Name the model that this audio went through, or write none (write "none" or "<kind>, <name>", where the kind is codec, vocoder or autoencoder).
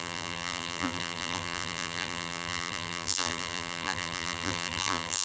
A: vocoder, BigVGAN v2